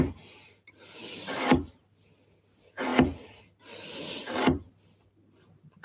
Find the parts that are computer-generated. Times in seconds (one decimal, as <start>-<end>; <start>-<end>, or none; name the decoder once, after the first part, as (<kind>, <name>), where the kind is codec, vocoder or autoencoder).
none